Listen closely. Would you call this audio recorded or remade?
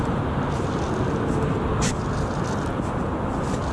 recorded